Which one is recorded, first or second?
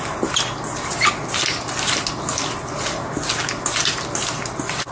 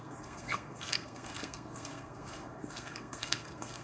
first